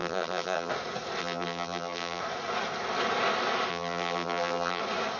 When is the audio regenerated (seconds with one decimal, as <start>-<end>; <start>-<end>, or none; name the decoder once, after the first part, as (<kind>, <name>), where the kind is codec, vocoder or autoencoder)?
0.0-0.7 (vocoder, BigVGAN v2); 1.2-2.2; 3.7-4.8